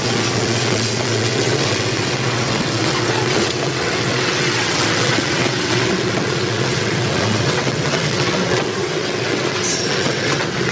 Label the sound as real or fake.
fake